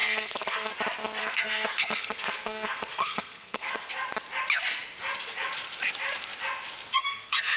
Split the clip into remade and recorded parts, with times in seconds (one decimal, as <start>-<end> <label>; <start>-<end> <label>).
0.0-0.7 remade; 0.7-1.2 recorded; 1.2-3.9 remade; 3.9-6.9 recorded; 6.9-7.6 remade